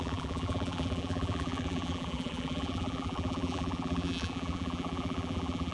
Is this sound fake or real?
fake